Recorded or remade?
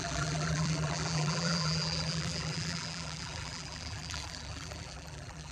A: remade